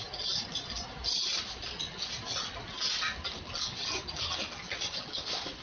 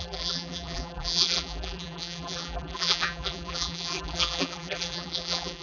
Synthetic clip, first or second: second